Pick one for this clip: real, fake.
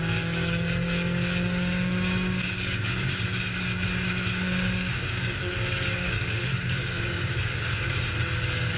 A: fake